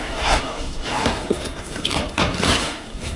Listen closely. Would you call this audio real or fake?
fake